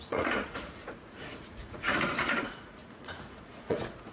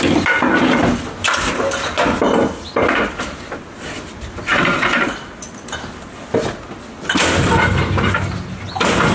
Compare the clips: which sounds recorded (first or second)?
second